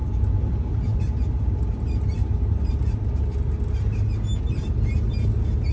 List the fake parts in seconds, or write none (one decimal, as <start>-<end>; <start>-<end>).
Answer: 0.0-0.5; 0.9-2.7

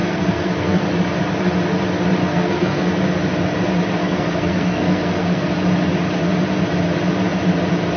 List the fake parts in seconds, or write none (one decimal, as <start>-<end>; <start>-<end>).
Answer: 0.0-0.8; 2.2-2.9; 4.0-5.5

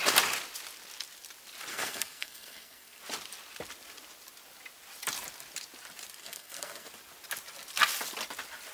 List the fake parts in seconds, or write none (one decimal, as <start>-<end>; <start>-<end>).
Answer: 1.7-3.0; 6.2-6.9

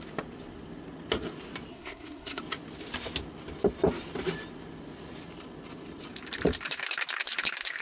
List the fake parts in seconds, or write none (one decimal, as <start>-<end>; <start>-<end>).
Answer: 1.7-2.4

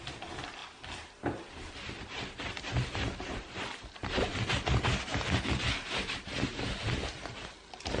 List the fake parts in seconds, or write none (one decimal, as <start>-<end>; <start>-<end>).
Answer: none

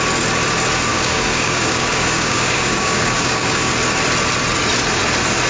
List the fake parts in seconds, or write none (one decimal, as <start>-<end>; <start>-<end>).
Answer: 0.9-3.7